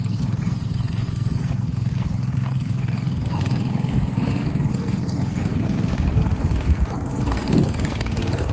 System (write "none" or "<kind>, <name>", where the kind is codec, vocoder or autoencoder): codec, SNAC